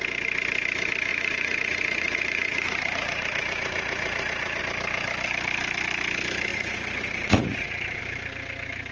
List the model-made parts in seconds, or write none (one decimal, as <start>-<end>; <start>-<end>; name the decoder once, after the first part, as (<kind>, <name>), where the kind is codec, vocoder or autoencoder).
1.1-4.6 (vocoder, Vocos); 6.5-8.0